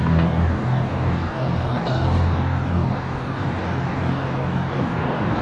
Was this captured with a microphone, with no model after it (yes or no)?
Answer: no